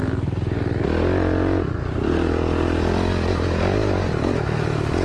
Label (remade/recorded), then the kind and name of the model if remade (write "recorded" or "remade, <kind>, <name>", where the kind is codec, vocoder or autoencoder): recorded